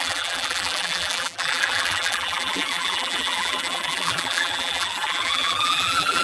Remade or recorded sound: remade